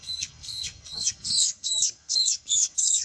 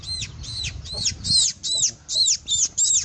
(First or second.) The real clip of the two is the second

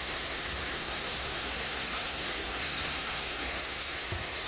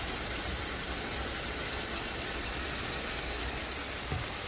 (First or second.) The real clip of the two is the second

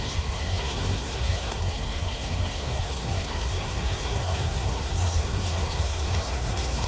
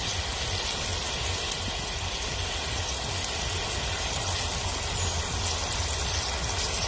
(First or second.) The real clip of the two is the second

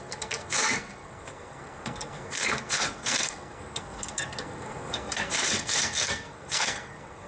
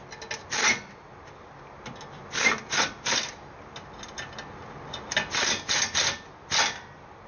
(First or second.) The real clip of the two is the second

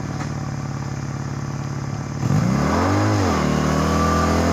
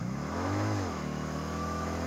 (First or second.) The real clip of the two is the first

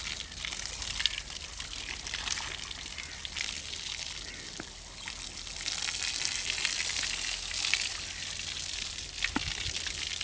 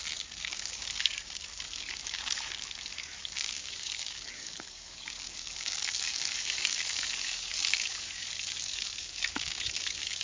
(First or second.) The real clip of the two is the first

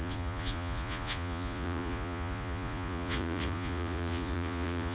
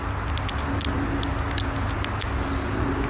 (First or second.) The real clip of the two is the second